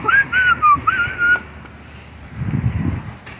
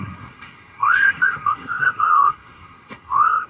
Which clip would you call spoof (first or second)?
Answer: second